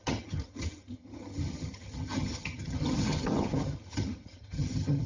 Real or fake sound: fake